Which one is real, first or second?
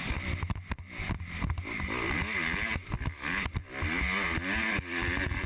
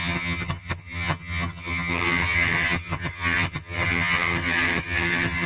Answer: first